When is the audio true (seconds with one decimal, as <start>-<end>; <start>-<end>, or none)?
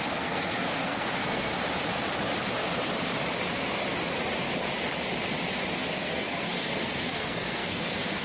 1.5-5.9